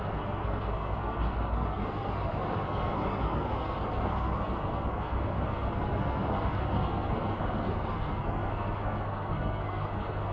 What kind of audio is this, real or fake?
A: fake